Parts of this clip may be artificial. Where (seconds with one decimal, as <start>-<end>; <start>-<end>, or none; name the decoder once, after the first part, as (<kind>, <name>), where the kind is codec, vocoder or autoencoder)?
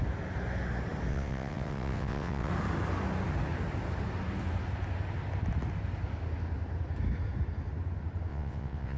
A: 1.1-2.5 (vocoder, WaveNeXt); 8.3-9.0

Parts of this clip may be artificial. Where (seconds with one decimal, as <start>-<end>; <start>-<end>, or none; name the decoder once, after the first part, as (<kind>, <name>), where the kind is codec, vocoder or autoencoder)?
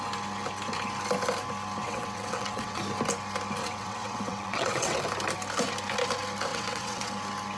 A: 1.8-2.8 (vocoder, WaveNeXt); 3.6-5.0; 6.5-7.1